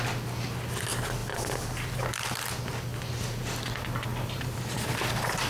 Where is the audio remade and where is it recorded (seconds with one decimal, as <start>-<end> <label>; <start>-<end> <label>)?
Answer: 0.0-1.2 recorded; 1.2-2.0 remade; 2.0-4.1 recorded; 4.1-4.9 remade; 4.9-5.5 recorded